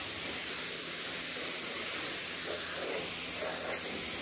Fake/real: real